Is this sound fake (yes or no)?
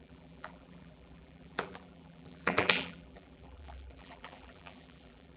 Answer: yes